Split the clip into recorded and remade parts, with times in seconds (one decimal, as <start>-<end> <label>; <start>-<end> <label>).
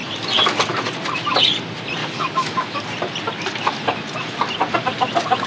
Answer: 0.0-2.0 recorded; 2.0-2.8 remade; 2.8-5.5 recorded